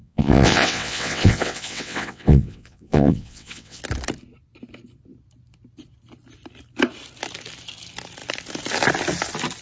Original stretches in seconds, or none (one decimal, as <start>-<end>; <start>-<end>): 3.8-9.6